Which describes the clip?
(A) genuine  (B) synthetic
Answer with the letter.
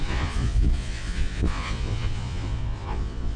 B